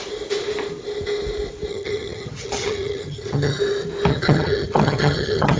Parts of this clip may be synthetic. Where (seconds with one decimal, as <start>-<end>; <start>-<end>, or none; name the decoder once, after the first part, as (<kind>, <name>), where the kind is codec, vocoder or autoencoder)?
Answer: 1.7-3.6 (vocoder, HiFi-GAN); 4.1-5.6

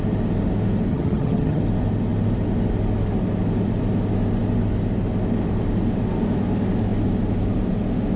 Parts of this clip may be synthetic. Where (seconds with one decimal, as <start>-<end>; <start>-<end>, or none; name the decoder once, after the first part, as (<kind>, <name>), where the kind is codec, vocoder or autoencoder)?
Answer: 0.9-1.6 (vocoder, HiFi-GAN)